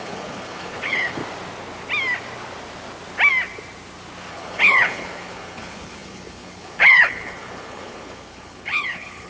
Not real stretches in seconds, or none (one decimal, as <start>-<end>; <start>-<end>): 0.0-1.2; 4.3-9.3